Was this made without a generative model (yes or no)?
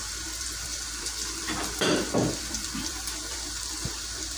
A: no